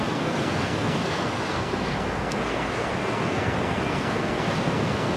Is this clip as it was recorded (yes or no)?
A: no